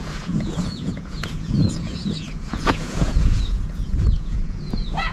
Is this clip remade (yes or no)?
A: yes